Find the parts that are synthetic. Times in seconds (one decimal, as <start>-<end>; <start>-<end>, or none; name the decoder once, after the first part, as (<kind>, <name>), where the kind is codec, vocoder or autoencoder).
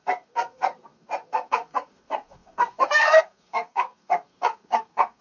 0.0-5.2 (codec, SNAC)